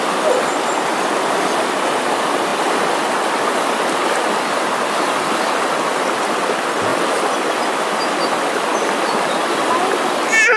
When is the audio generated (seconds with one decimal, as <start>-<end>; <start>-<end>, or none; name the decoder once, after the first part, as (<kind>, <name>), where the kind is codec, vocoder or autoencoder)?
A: none

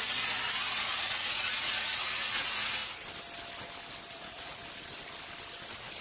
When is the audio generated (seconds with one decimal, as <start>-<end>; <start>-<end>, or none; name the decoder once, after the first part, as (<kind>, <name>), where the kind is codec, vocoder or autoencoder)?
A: 0.7-2.8 (vocoder, Vocos); 4.1-4.6